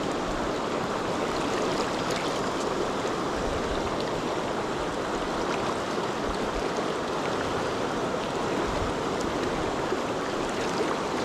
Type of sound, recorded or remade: recorded